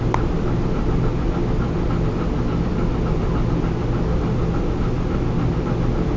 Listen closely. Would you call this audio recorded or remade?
recorded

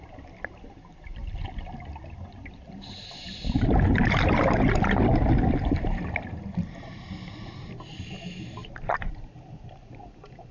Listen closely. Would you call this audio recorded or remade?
recorded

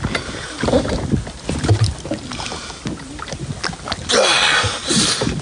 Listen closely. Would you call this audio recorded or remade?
recorded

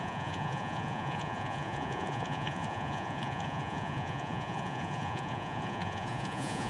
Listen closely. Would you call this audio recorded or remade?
remade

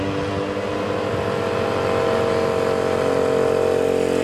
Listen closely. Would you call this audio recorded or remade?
recorded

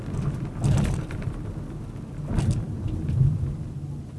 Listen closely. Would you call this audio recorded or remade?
recorded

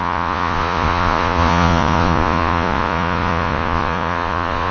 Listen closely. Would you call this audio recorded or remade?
remade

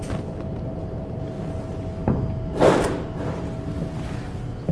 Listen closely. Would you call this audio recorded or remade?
recorded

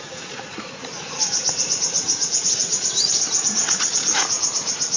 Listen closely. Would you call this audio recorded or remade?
remade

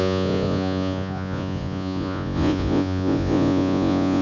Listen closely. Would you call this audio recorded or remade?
remade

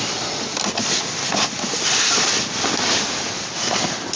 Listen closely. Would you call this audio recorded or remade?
recorded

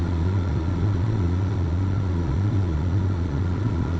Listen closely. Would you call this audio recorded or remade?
remade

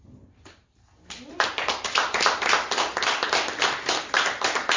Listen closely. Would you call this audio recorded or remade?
recorded